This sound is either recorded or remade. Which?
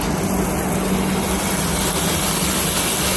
recorded